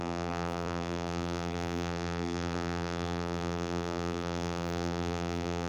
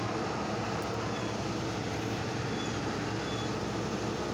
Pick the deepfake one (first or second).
first